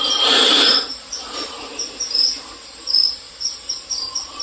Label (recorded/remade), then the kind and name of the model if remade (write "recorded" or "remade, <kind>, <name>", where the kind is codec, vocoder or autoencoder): recorded